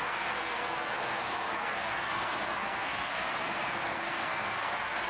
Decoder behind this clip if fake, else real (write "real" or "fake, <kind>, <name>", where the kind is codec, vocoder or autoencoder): fake, codec, SNAC